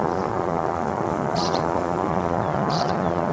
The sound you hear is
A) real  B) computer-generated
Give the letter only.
B